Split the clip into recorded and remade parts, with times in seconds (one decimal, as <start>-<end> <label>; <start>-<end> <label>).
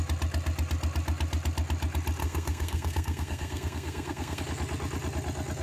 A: 0.0-2.2 recorded; 2.2-4.4 remade; 4.4-5.6 recorded